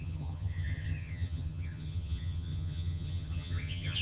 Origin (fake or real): fake